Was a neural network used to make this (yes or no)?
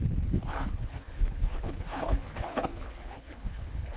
yes